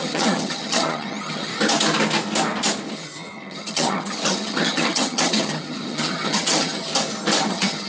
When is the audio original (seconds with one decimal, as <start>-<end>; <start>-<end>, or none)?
1.5-2.9; 6.9-7.5